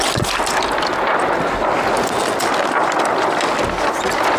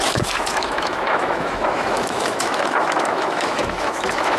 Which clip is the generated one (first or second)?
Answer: second